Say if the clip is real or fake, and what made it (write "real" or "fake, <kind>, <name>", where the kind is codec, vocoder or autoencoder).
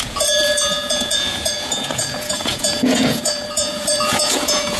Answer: fake, vocoder, Vocos